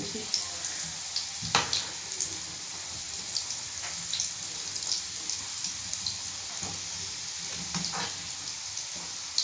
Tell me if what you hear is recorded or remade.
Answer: recorded